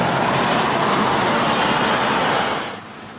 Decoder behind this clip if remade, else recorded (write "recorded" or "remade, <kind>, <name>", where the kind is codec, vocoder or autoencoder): recorded